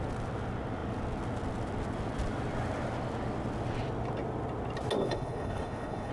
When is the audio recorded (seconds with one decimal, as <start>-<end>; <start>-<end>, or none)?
0.0-5.0